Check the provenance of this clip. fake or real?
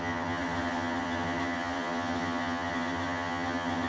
fake